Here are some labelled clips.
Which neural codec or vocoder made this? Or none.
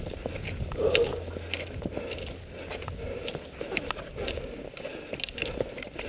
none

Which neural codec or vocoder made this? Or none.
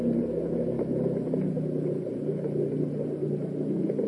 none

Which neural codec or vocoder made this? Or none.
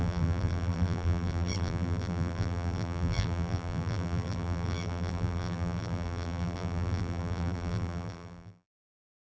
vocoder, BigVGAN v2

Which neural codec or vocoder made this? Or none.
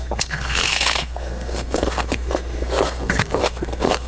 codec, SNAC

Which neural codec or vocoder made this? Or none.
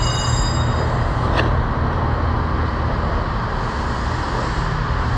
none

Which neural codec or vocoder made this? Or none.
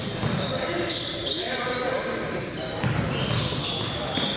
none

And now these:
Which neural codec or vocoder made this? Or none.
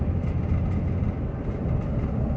none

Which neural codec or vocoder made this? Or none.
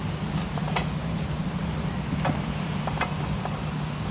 none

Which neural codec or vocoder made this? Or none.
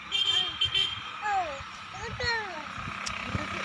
none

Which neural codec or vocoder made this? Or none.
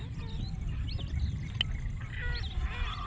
none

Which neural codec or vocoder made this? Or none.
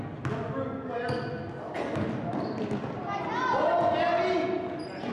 none